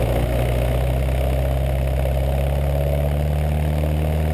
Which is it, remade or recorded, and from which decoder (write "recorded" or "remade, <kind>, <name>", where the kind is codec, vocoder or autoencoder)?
recorded